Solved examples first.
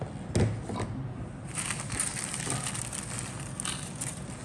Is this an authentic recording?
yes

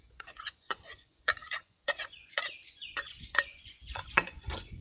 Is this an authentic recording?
no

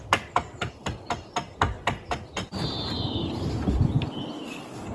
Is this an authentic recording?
yes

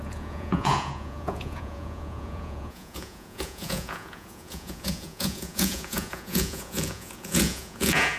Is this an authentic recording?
no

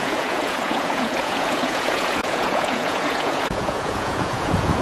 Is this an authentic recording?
no